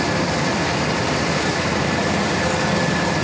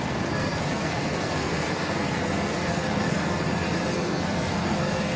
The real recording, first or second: first